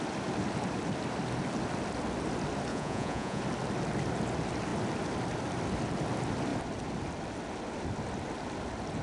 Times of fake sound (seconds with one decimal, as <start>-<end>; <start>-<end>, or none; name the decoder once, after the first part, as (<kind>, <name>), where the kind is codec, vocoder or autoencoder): 2.7-3.4 (vocoder, Vocos)